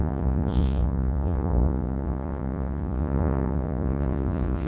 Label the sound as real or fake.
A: fake